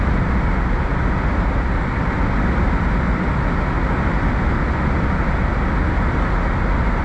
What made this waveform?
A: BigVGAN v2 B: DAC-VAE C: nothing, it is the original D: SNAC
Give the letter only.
C